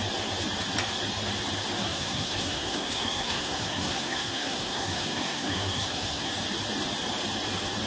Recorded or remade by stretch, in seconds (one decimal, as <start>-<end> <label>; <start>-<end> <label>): 0.0-1.8 recorded; 1.8-6.3 remade; 6.3-7.9 recorded

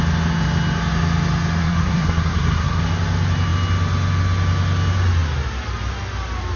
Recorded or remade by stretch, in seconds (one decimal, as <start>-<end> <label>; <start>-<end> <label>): 0.0-1.6 recorded; 1.6-2.8 remade; 2.8-6.6 recorded

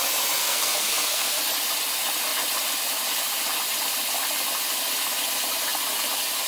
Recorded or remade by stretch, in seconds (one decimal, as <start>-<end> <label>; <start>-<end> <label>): 0.0-0.4 recorded; 0.4-1.4 remade; 1.4-6.5 recorded

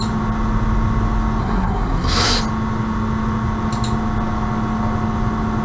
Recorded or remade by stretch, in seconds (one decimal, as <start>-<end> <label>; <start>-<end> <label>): 0.0-1.4 recorded; 1.4-2.4 remade; 2.4-5.6 recorded

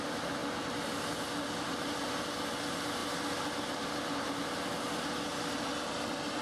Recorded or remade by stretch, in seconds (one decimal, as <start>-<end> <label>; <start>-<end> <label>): 0.0-6.4 recorded

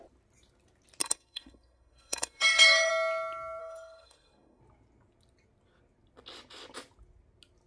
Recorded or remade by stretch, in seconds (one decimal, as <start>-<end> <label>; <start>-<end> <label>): 0.0-1.0 recorded; 1.0-2.9 remade; 2.9-3.6 recorded; 3.6-4.6 remade; 4.6-7.7 recorded